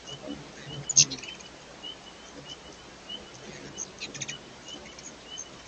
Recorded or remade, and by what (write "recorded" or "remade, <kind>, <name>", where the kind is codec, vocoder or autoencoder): recorded